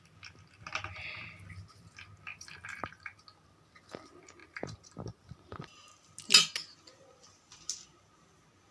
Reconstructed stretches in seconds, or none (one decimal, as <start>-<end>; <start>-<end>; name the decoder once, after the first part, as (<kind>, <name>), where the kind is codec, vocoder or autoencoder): none